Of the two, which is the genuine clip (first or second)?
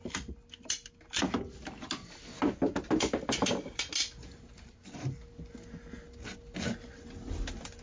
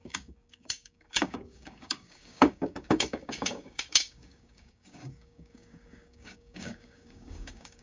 first